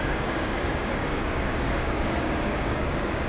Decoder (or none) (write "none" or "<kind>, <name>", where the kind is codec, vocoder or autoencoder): codec, DAC